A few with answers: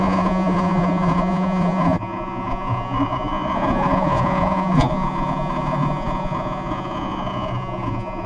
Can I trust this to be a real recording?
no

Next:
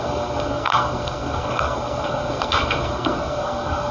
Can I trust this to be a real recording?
no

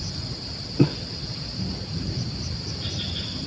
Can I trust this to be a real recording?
no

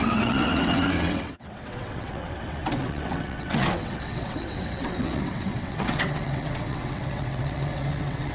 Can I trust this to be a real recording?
no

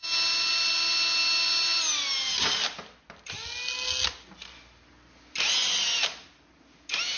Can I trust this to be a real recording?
yes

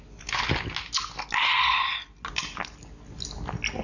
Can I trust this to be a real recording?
yes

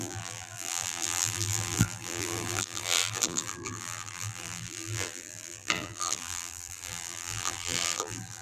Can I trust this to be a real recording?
no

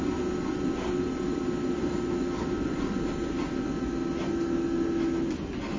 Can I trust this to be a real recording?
yes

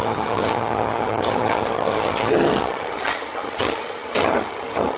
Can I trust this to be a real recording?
no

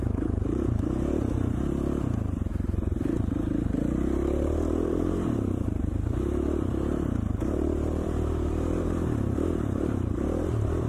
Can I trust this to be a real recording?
no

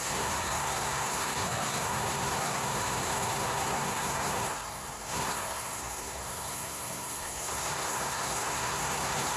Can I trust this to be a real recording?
no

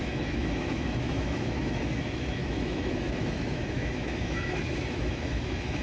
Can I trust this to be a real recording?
no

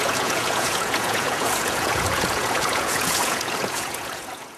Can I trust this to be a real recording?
no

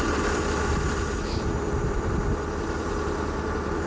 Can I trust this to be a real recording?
yes